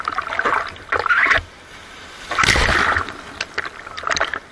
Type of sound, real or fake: real